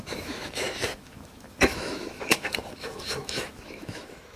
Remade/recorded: remade